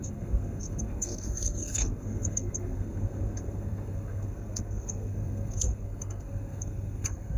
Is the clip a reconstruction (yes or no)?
yes